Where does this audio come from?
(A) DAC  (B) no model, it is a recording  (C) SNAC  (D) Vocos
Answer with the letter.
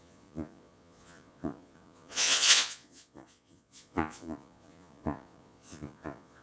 D